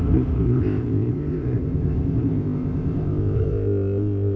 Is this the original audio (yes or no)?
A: no